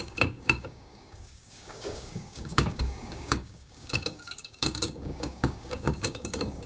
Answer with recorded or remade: remade